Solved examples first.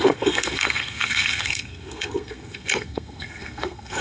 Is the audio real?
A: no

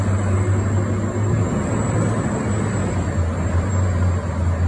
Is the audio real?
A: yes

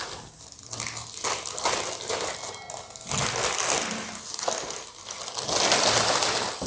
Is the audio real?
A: yes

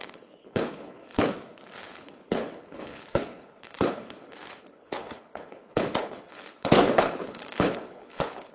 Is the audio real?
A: no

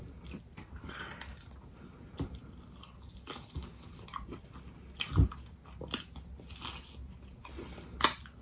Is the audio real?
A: yes